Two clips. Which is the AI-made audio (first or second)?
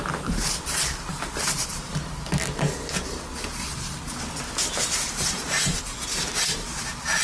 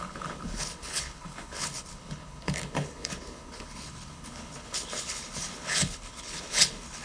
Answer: second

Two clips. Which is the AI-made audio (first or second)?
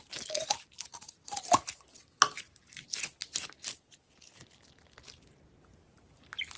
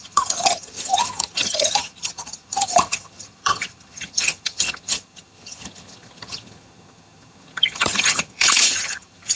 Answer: second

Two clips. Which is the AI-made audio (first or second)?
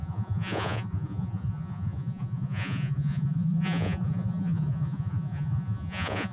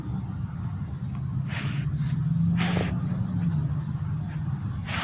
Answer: first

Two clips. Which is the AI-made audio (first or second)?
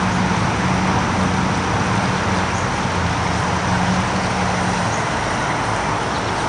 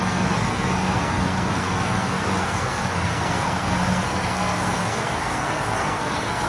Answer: second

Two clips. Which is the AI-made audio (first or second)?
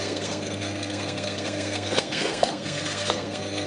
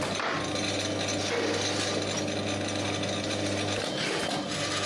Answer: first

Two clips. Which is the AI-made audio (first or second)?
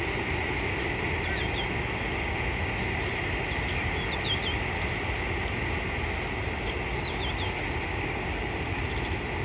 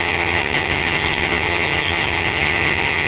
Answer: second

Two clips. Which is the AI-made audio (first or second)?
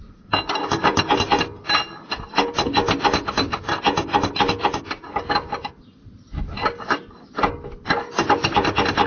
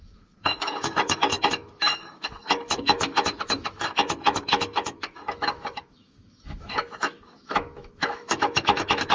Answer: second